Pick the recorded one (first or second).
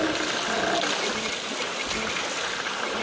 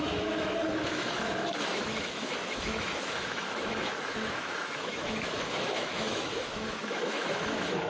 first